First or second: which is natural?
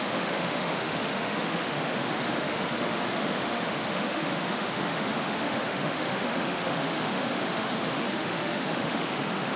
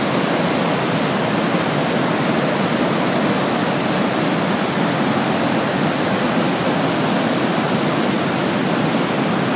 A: second